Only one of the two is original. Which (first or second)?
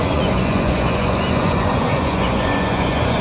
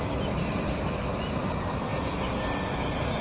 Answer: second